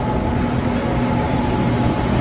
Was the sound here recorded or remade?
recorded